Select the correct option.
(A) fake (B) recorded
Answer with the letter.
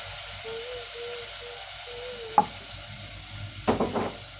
B